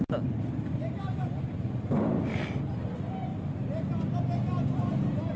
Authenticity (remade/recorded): recorded